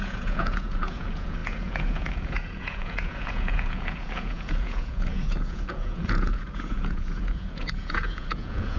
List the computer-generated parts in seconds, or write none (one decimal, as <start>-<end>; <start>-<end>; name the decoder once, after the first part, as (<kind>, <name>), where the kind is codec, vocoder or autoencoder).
0.0-8.8 (vocoder, Vocos)